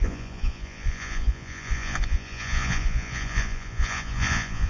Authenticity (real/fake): fake